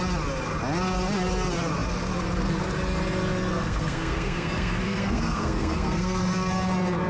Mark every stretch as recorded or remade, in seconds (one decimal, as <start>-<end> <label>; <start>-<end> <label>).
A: 0.0-3.5 recorded; 3.5-6.5 remade; 6.5-7.1 recorded